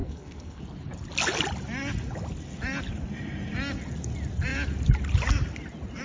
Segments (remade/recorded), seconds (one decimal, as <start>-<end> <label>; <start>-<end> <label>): 0.0-0.6 remade; 0.6-6.0 recorded